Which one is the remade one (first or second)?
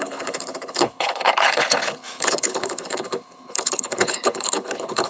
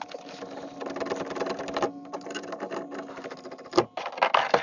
first